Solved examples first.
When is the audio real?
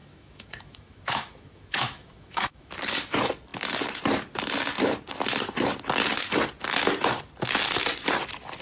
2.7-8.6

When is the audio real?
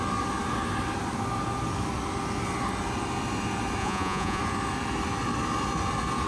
0.0-3.8; 4.4-6.3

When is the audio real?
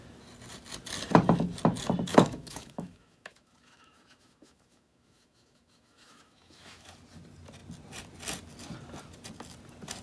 0.0-2.1; 6.9-10.0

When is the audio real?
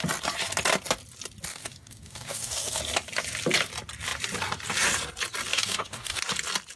0.0-1.5; 2.8-5.5; 6.2-6.8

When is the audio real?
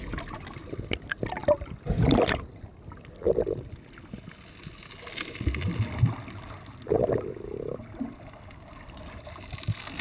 0.0-10.0